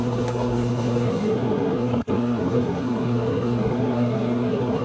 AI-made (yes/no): yes